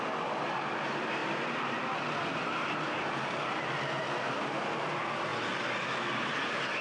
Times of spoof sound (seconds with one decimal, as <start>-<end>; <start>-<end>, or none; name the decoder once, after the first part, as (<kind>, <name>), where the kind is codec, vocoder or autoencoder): none